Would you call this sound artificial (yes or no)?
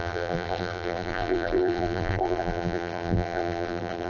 yes